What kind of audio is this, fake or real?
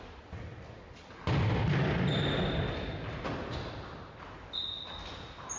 real